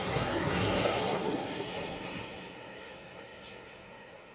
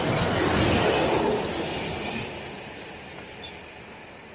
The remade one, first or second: first